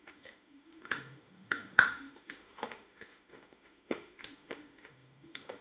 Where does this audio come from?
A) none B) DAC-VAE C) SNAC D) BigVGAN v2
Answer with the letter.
B